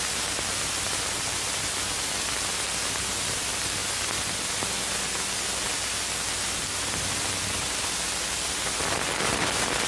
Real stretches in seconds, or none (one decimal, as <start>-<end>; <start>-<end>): 0.0-9.9